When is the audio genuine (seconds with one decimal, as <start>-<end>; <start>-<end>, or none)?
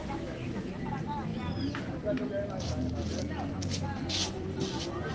0.7-5.1